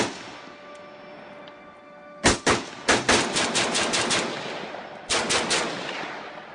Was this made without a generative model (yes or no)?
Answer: yes